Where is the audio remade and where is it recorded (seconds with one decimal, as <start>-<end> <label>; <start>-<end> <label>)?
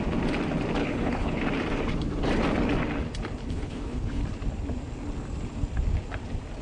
0.0-0.8 recorded; 0.8-1.4 remade; 1.4-3.4 recorded; 3.4-4.2 remade; 4.2-6.6 recorded